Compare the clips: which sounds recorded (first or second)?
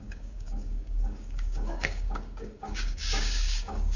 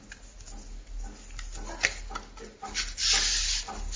second